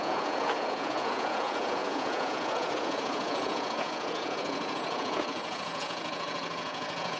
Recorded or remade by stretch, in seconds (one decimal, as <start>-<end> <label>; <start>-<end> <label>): 0.0-7.2 remade